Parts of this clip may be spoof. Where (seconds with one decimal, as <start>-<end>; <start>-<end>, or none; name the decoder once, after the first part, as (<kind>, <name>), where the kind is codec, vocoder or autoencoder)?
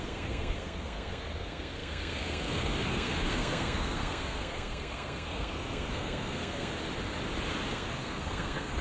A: 0.0-6.7 (codec, SNAC); 7.7-8.8